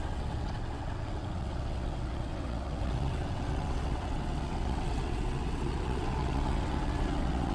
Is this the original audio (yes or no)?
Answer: no